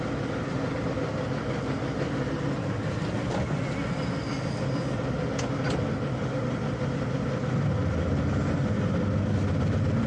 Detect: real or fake real